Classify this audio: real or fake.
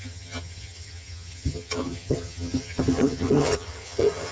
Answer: fake